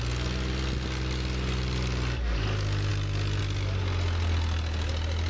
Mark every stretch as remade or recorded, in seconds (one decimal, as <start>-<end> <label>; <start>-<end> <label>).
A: 0.0-5.3 recorded